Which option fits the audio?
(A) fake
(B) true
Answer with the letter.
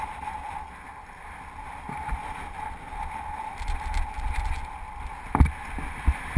B